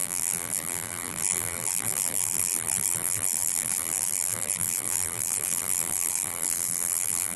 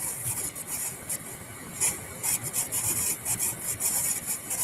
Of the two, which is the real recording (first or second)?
second